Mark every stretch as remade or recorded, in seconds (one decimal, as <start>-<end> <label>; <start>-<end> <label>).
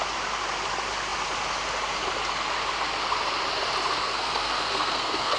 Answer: 0.0-4.0 recorded; 4.0-5.4 remade